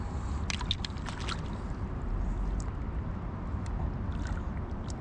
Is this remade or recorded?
recorded